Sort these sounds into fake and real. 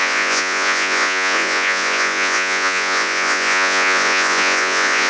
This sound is fake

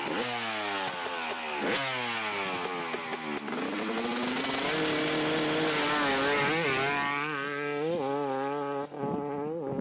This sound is real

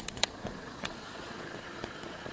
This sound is fake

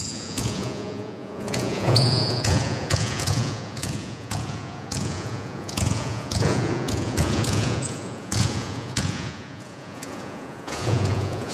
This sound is fake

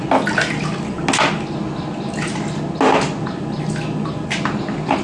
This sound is real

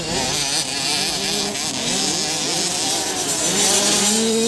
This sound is real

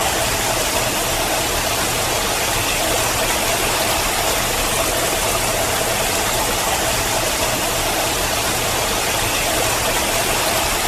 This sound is real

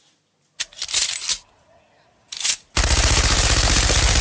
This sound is real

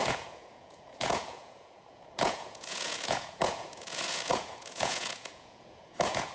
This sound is fake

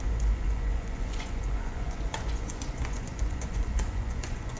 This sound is fake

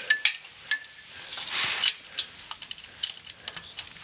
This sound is real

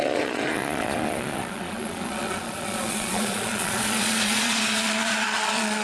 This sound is fake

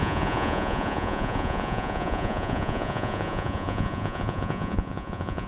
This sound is fake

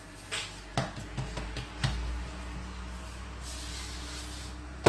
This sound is real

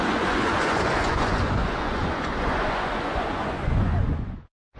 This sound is fake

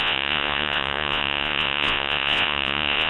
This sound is fake